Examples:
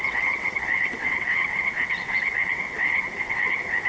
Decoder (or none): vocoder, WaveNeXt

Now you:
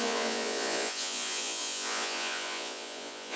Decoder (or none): vocoder, Vocos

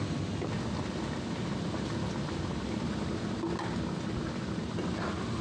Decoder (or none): none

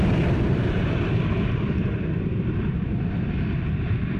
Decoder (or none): vocoder, BigVGAN v2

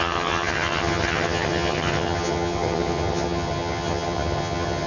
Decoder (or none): vocoder, HiFi-GAN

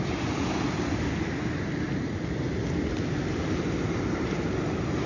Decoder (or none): none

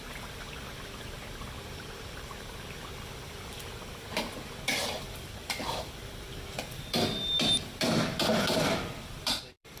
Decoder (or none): vocoder, BigVGAN v2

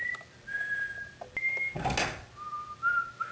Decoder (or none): none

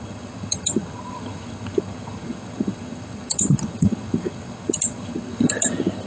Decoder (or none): vocoder, HiFi-GAN